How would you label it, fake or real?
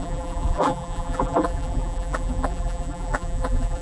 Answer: fake